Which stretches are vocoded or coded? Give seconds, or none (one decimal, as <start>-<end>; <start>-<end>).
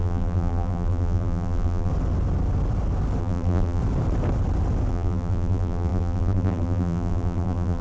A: 0.0-1.9; 3.2-3.8; 4.9-7.8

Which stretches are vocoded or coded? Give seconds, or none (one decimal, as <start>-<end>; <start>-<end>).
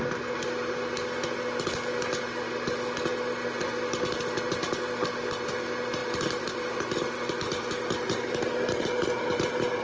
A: none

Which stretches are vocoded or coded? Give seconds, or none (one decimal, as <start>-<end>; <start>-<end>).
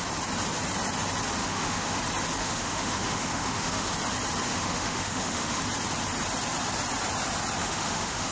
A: 1.4-2.0; 2.4-3.9; 4.5-5.6; 7.6-8.3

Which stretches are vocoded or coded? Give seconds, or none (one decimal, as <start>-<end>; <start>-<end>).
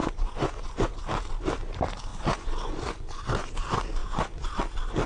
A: 0.0-1.0; 2.1-3.5; 4.0-4.6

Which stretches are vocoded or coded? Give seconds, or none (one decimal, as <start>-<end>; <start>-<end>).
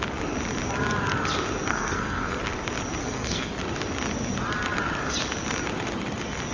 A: 1.7-2.4; 3.0-3.5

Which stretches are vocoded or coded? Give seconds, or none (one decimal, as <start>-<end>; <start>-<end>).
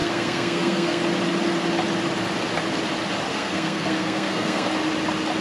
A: 0.0-1.0; 3.3-4.7